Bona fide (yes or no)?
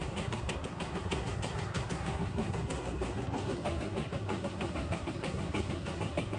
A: no